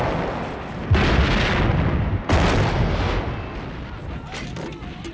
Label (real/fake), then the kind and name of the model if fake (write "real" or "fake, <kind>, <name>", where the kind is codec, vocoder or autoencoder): real